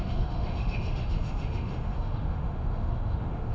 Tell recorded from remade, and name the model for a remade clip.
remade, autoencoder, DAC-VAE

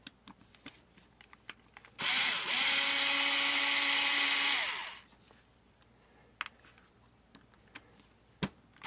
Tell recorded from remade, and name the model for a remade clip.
recorded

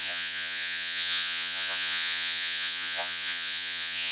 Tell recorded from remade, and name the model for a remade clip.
remade, vocoder, Vocos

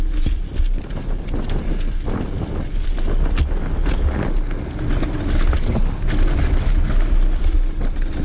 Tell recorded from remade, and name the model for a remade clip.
recorded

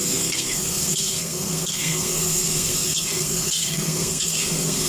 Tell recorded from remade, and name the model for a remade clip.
remade, codec, SNAC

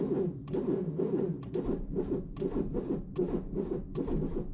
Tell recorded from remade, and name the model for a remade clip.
recorded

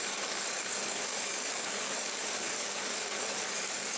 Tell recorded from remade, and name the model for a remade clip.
remade, codec, DAC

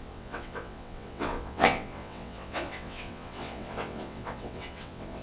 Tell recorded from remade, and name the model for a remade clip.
remade, vocoder, WaveNeXt